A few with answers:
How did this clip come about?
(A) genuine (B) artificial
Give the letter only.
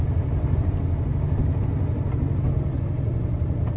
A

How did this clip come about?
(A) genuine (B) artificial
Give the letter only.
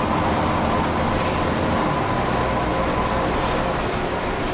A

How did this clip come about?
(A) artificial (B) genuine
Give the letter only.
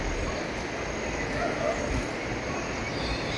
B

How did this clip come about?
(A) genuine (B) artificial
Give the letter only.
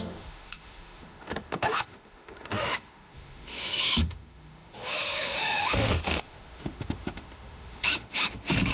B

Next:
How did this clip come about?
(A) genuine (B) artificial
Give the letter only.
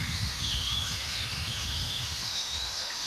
B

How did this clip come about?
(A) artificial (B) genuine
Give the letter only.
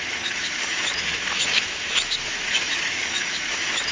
A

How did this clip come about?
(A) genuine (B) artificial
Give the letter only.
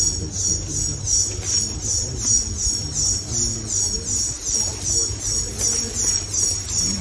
A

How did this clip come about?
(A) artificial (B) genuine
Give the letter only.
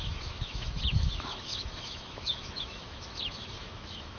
A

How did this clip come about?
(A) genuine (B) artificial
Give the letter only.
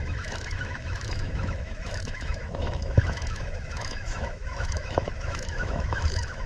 B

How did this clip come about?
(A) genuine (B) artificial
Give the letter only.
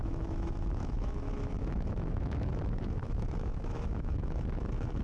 B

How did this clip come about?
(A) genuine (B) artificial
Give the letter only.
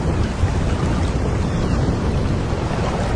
A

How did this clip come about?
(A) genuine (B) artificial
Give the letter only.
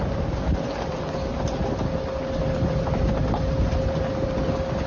A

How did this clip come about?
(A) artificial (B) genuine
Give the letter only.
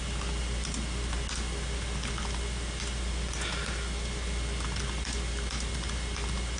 B